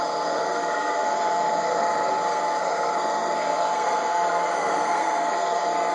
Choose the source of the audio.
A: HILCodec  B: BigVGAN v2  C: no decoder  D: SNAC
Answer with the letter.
D